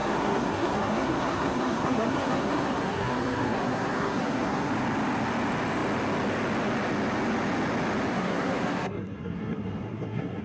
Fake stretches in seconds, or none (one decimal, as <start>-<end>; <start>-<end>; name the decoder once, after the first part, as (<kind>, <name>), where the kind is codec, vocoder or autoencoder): 0.0-4.7 (codec, SNAC); 8.1-10.4